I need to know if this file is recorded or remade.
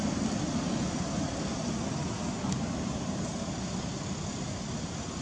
recorded